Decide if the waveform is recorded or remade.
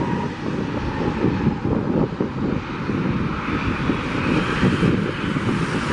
recorded